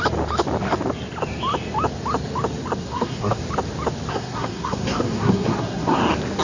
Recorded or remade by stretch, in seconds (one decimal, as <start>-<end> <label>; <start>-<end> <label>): 0.0-2.8 recorded; 2.8-3.4 remade; 3.4-4.1 recorded; 4.1-6.0 remade; 6.0-6.4 recorded